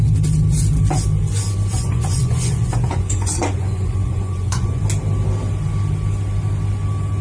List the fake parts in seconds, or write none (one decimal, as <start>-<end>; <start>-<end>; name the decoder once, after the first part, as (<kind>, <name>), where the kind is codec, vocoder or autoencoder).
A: 1.7-4.8 (vocoder, Vocos)